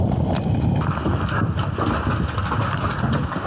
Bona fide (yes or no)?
yes